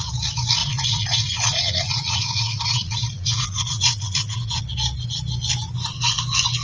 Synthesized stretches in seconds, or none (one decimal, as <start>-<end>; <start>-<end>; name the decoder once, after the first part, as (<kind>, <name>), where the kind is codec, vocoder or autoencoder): 0.6-4.6 (vocoder, Vocos)